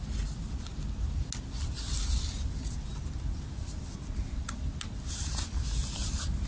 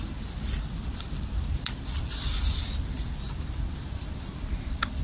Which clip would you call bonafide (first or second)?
first